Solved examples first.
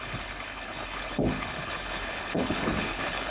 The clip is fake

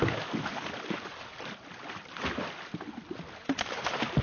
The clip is real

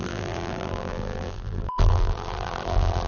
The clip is fake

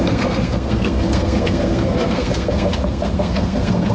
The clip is fake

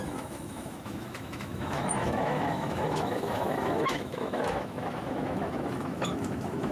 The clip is fake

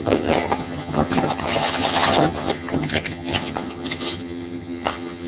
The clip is fake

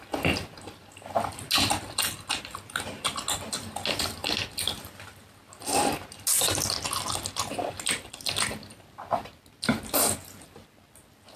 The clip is real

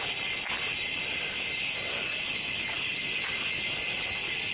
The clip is real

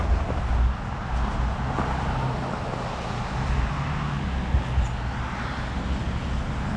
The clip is real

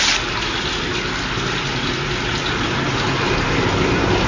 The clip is real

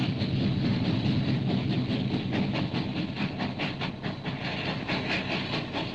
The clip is real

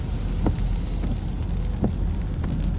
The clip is real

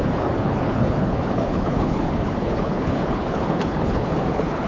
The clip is fake